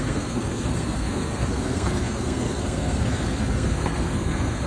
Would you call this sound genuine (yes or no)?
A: no